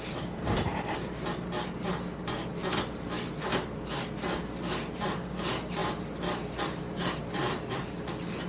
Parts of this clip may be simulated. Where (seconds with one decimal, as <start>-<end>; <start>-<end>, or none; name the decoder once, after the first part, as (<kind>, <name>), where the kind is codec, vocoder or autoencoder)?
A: 0.0-2.6 (vocoder, BigVGAN v2); 3.3-8.5